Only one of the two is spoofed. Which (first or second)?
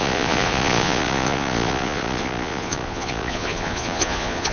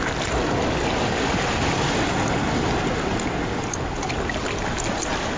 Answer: first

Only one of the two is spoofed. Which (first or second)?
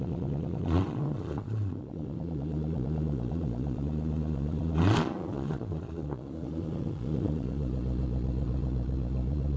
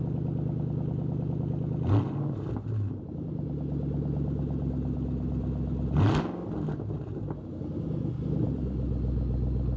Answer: first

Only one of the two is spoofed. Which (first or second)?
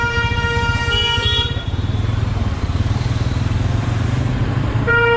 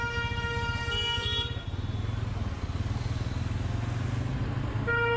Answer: first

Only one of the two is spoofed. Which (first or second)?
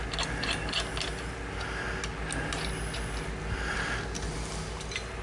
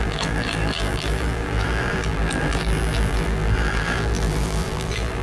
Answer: second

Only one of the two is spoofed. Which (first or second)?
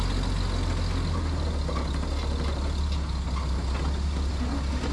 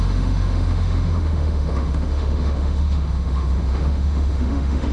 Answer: second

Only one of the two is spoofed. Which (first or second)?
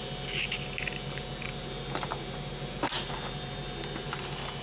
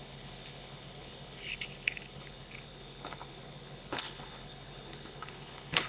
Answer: second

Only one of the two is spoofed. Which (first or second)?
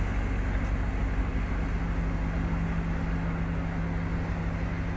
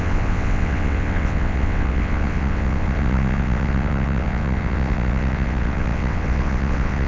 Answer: second